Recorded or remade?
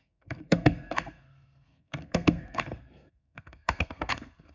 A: remade